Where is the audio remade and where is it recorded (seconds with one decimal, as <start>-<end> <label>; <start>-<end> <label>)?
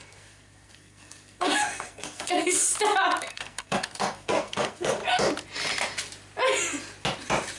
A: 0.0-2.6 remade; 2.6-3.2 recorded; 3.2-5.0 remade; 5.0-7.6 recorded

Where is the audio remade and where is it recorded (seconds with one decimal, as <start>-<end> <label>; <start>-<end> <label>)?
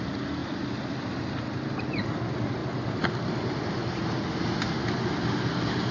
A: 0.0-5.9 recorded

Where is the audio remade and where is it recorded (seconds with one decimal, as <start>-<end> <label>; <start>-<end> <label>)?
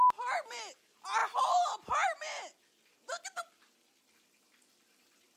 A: 0.0-5.4 remade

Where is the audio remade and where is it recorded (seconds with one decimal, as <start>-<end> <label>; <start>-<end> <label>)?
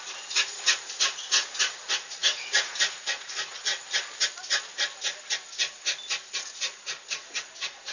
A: 0.0-3.7 remade; 3.7-6.3 recorded; 6.3-7.9 remade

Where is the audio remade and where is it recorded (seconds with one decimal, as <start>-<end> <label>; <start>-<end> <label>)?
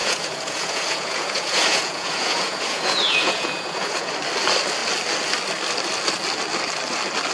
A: 0.0-4.1 remade; 4.1-7.3 recorded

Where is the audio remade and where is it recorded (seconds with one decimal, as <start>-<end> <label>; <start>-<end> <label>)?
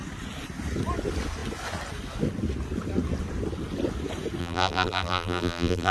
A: 0.0-4.4 recorded; 4.4-5.9 remade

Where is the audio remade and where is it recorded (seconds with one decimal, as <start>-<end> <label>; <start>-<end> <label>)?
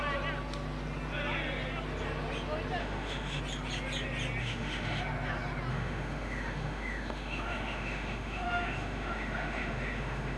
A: 0.0-2.8 recorded; 2.8-3.4 remade; 3.4-4.4 recorded; 4.4-5.0 remade; 5.0-5.7 recorded; 5.7-10.4 remade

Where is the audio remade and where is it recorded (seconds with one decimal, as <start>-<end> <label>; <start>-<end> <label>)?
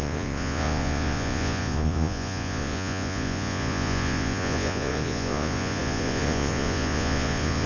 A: 0.0-7.7 remade